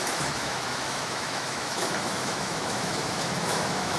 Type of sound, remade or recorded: remade